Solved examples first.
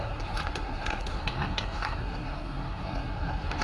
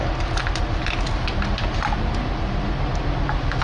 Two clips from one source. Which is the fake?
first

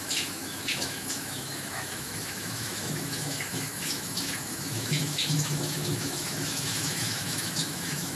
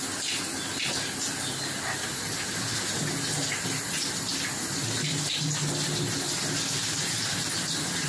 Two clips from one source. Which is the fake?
first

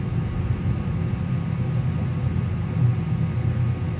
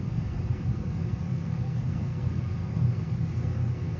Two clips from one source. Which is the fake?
second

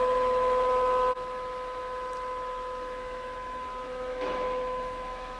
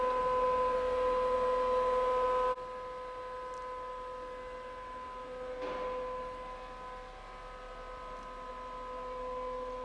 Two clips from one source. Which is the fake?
first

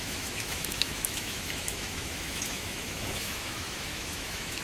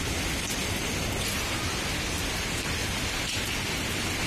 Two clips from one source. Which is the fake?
first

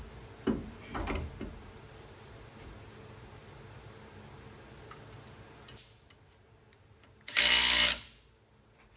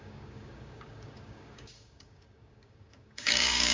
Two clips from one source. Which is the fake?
second